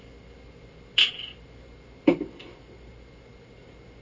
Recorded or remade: recorded